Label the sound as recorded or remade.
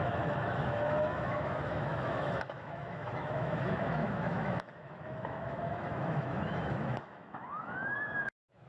remade